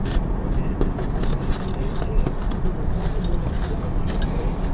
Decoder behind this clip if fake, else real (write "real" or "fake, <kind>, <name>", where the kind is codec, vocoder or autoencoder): real